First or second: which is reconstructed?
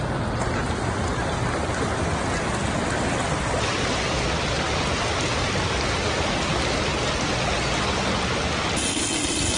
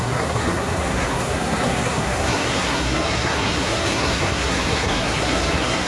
second